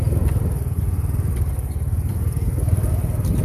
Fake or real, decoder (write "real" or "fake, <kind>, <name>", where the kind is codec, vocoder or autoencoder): fake, vocoder, BigVGAN v2